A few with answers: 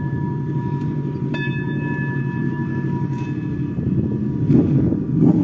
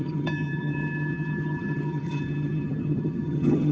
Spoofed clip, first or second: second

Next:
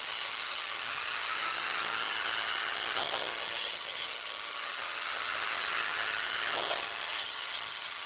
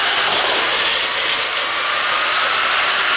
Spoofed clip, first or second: first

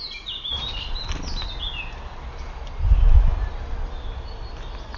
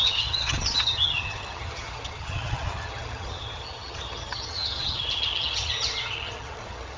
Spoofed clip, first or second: second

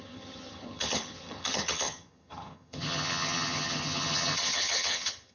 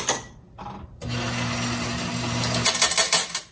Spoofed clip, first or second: first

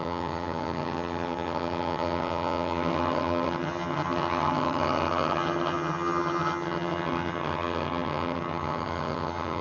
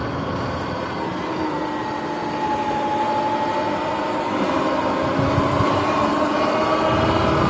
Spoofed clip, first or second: first